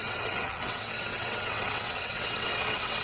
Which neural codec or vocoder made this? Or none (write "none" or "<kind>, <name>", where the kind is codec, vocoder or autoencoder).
vocoder, WaveNeXt